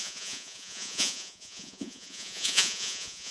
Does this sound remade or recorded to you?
remade